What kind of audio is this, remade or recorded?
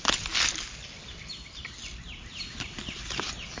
recorded